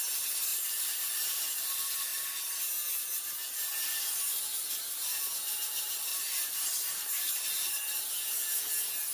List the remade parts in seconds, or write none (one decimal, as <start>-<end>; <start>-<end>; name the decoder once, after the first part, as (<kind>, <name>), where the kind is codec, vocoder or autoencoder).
0.5-1.5 (vocoder, BigVGAN v2); 6.1-7.3